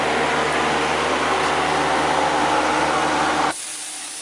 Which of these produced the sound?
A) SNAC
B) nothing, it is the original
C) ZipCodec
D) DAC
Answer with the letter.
B